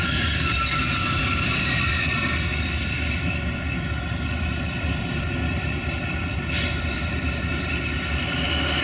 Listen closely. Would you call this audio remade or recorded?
remade